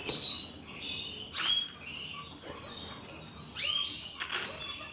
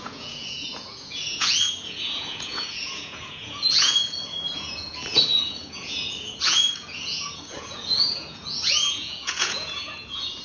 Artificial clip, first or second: second